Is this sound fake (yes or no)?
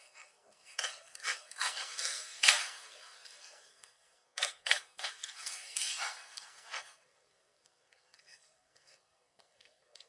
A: yes